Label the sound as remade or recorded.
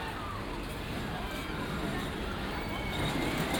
recorded